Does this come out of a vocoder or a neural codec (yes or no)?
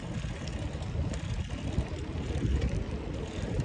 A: no